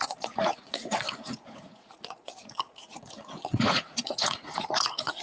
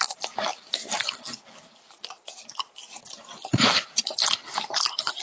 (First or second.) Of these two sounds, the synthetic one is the first